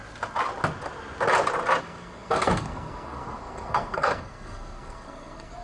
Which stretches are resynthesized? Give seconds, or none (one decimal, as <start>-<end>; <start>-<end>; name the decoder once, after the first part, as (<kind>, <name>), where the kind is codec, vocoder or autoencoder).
1.8-5.6 (codec, SNAC)